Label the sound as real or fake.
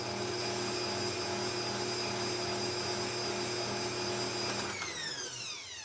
real